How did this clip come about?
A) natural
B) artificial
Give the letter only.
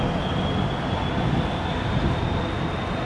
A